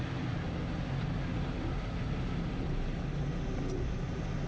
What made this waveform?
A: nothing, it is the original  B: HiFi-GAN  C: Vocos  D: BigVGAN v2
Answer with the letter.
A